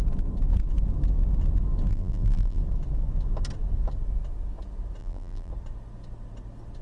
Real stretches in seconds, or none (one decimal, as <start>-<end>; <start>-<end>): 0.0-1.9; 2.6-5.0; 5.5-6.8